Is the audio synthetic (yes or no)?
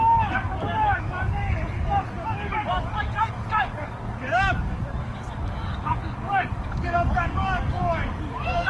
yes